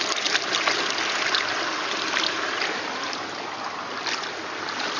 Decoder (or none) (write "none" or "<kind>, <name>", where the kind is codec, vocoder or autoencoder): none